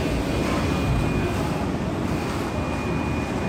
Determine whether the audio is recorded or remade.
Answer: recorded